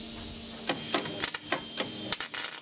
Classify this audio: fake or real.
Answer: real